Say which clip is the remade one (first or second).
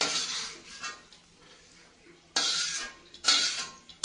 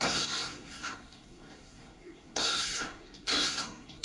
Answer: second